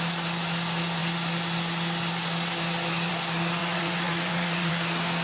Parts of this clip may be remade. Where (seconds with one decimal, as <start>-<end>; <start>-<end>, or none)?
3.6-4.7